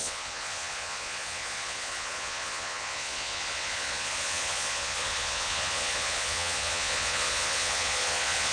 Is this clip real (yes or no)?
no